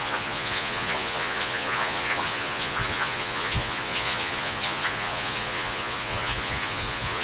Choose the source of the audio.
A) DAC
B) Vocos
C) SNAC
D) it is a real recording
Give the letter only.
B